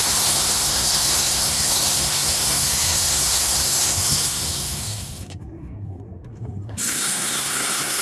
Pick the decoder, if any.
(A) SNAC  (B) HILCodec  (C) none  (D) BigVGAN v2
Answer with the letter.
A